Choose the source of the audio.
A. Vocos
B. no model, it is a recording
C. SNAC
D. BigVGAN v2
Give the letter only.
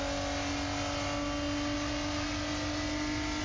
B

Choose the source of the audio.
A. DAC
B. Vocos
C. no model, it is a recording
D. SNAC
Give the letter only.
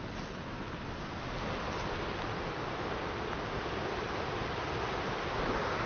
C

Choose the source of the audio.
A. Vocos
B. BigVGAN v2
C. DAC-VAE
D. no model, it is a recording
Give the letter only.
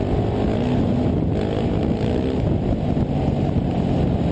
D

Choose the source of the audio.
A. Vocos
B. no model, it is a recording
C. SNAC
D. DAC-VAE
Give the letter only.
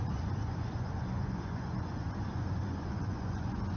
A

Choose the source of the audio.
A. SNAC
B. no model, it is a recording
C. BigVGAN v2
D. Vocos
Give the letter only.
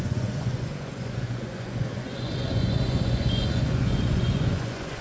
D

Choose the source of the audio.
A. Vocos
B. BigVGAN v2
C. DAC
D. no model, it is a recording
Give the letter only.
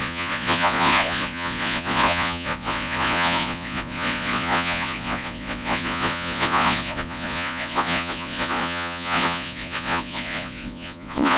A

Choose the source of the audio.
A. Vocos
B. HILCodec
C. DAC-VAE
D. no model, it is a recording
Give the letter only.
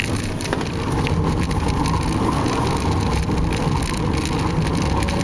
D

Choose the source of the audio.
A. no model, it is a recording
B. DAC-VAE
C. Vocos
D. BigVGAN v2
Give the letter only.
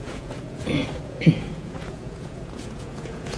C